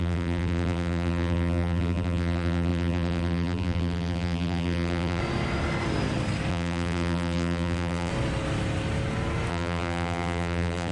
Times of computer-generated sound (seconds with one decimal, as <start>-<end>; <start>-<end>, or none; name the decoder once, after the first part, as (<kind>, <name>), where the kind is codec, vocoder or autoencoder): 0.0-5.2 (vocoder, BigVGAN v2); 6.5-8.1; 9.5-10.9